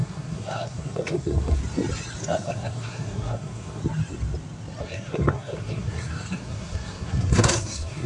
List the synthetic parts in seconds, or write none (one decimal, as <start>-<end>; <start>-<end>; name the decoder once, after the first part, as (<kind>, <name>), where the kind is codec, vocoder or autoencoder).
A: 0.0-1.6 (codec, SNAC); 2.2-3.8; 4.8-8.1